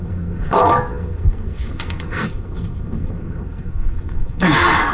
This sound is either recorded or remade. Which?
remade